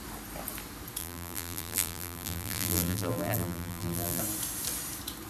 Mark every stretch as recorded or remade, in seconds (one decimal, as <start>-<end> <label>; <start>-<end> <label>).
0.0-1.0 recorded; 1.0-4.2 remade; 4.2-5.3 recorded